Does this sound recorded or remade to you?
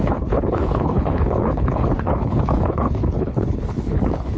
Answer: remade